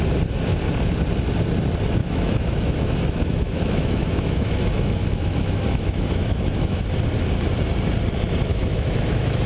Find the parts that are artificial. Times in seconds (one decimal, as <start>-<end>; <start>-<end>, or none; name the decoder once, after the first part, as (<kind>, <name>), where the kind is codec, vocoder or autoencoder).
2.0-6.8 (autoencoder, DAC-VAE); 8.5-9.5